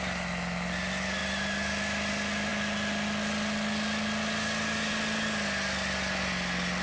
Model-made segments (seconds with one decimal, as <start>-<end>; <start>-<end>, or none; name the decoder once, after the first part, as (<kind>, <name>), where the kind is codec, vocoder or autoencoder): none